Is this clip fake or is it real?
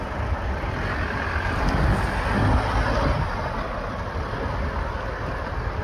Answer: real